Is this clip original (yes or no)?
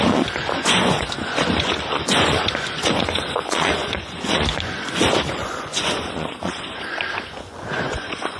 no